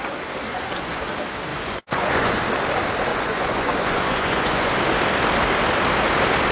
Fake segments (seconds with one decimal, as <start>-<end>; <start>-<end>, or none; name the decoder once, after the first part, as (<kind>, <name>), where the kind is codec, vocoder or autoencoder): 0.5-1.0 (vocoder, Vocos); 1.5-2.4; 3.1-4.7

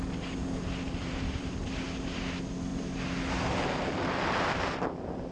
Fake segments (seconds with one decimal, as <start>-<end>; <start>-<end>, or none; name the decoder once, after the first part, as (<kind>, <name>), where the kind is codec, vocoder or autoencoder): 1.0-1.6 (vocoder, BigVGAN v2)

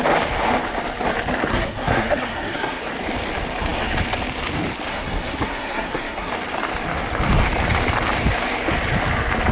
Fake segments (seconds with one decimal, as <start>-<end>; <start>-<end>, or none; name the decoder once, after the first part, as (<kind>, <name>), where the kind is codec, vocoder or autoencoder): 1.5-2.8 (codec, SNAC); 4.9-6.3

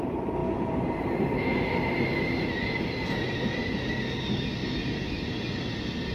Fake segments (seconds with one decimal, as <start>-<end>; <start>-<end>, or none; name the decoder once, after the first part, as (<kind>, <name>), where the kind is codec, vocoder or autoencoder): none

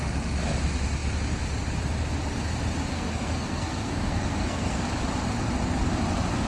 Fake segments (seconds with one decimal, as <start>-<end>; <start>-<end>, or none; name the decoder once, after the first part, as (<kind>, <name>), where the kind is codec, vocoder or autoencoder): 2.9-4.8 (codec, SNAC)